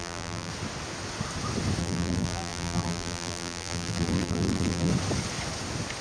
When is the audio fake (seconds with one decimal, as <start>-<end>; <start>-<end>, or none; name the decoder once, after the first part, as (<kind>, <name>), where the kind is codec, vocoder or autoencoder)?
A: 0.0-0.5 (vocoder, BigVGAN v2); 1.8-4.9